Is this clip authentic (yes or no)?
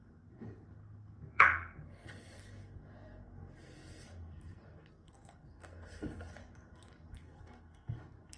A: no